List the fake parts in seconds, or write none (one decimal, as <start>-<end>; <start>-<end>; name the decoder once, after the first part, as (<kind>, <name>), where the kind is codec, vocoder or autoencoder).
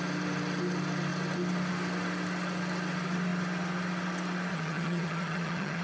4.5-5.8 (vocoder, HiFi-GAN)